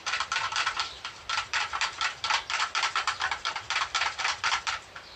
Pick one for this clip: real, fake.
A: fake